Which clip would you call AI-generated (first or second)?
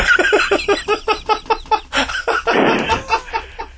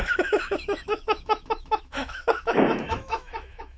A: second